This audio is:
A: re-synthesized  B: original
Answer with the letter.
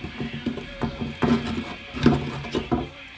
B